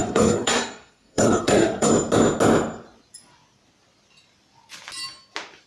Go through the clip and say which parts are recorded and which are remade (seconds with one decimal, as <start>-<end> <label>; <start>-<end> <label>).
0.0-1.9 remade; 1.9-5.7 recorded

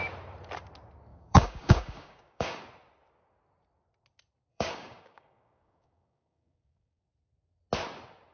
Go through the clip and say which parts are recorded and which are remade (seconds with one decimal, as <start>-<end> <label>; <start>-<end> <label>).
0.0-1.1 recorded; 1.1-2.6 remade; 2.6-4.5 recorded; 4.5-7.0 remade; 7.0-8.3 recorded

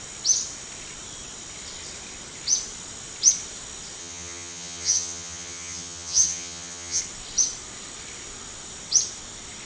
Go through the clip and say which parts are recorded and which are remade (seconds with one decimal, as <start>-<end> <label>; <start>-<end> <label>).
0.0-4.0 recorded; 4.0-7.0 remade; 7.0-9.7 recorded

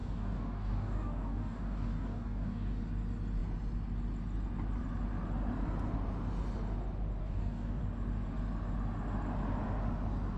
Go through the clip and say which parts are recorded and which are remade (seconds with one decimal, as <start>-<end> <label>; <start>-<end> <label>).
0.0-2.8 remade; 2.8-7.2 recorded; 7.2-7.8 remade; 7.8-10.4 recorded

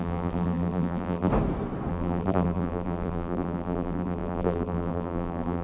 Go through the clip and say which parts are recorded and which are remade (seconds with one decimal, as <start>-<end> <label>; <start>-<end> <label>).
0.0-1.3 remade; 1.3-1.9 recorded; 1.9-5.6 remade

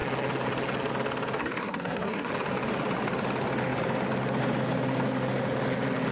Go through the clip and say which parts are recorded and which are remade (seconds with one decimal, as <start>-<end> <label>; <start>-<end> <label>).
0.0-1.4 recorded; 1.4-2.3 remade; 2.3-6.1 recorded

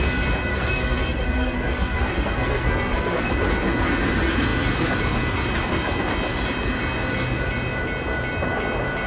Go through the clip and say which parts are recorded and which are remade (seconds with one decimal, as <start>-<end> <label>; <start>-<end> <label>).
0.0-0.5 recorded; 0.5-3.3 remade; 3.3-9.1 recorded